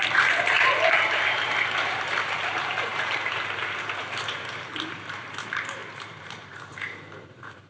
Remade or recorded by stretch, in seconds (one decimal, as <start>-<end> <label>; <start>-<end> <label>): 0.0-7.7 remade